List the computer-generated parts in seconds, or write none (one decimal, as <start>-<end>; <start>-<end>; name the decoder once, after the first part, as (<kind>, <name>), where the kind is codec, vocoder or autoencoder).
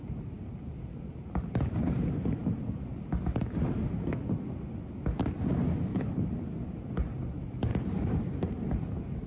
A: 0.9-2.3 (vocoder, BigVGAN v2); 5.9-6.4; 7.7-8.6